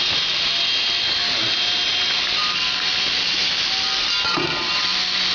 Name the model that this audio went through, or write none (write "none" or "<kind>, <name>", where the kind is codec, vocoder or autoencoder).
none